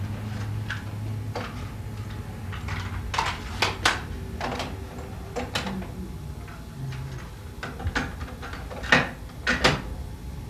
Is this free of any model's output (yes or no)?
yes